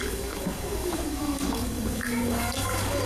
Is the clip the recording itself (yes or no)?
no